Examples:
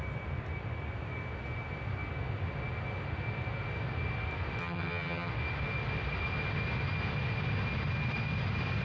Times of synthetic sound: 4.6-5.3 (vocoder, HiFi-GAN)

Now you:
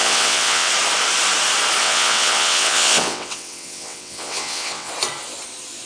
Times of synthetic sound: 0.0-0.7 (vocoder, WaveNeXt); 1.8-4.9

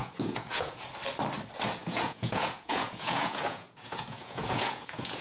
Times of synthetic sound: 0.0-0.9 (vocoder, Vocos); 1.8-5.2

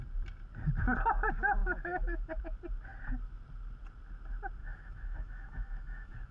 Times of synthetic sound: 1.6-2.4 (autoencoder, DAC-VAE); 4.6-6.3

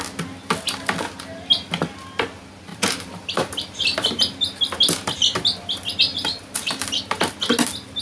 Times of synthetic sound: 2.7-4.6 (vocoder, BigVGAN v2); 6.1-7.0